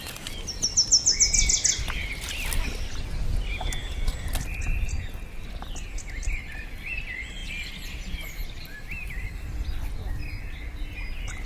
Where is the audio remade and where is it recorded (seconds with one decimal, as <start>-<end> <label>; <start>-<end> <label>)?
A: 0.0-11.5 recorded